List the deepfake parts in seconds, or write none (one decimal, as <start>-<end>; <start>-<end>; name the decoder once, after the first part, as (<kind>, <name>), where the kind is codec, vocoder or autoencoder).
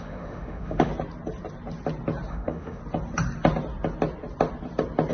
0.0-0.9 (autoencoder, DAC-VAE); 2.3-2.8